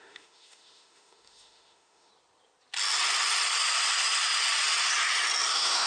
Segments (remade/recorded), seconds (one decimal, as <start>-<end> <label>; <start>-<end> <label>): 0.0-2.1 remade; 2.1-5.5 recorded; 5.5-5.9 remade